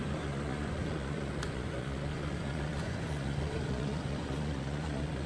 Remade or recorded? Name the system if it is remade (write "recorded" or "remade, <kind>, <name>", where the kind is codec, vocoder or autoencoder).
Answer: remade, vocoder, Vocos